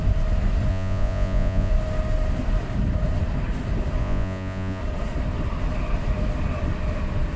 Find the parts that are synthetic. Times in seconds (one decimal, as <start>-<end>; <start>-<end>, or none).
0.7-1.7; 4.0-4.8